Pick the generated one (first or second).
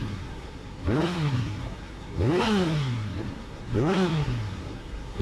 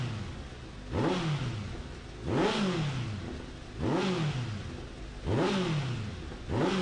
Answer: first